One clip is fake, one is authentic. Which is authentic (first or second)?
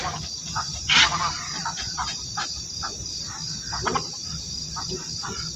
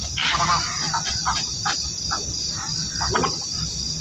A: second